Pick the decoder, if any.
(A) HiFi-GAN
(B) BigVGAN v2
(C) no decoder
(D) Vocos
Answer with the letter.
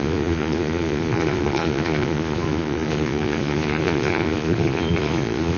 D